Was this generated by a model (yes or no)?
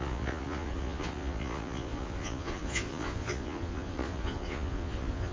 yes